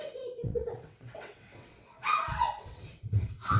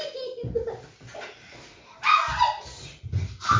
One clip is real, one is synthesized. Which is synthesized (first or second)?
first